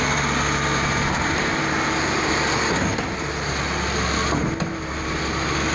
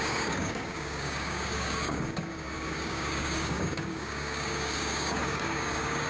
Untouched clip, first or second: first